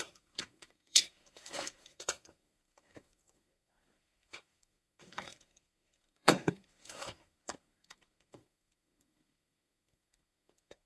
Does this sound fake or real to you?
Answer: fake